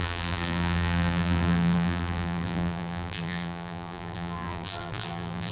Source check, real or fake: fake